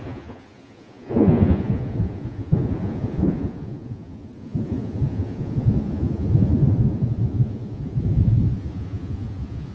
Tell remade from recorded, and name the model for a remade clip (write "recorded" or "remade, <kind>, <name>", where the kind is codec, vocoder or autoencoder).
remade, vocoder, Vocos